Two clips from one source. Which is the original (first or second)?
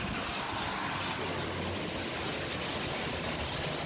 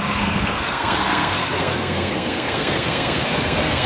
first